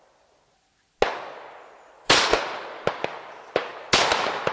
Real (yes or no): yes